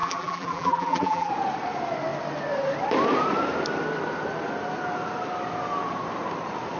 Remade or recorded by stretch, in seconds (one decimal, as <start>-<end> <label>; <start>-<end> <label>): 0.0-1.3 remade; 1.3-6.8 recorded